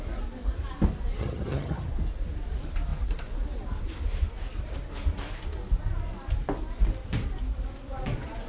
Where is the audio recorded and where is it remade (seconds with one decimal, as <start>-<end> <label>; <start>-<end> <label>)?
0.0-1.2 recorded; 1.2-1.9 remade; 1.9-8.5 recorded